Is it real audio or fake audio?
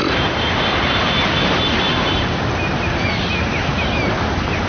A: real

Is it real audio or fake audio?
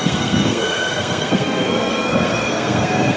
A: fake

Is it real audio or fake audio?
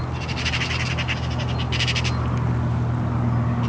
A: real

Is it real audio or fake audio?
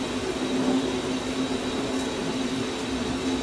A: real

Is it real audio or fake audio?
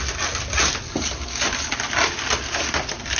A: real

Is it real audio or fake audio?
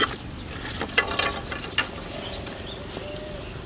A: real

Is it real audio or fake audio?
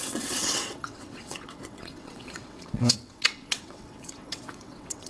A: fake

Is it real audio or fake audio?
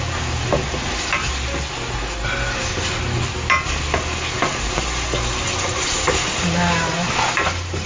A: real